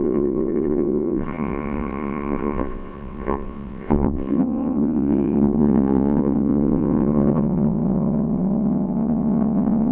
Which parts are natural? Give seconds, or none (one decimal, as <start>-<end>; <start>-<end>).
none